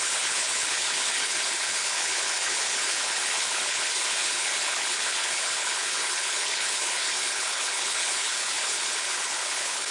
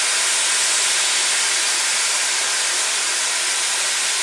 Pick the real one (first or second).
second